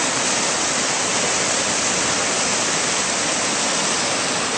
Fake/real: real